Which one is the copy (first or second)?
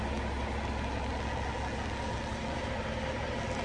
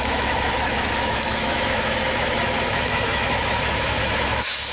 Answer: second